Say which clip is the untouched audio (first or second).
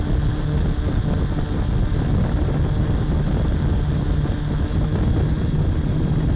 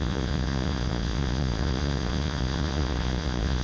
first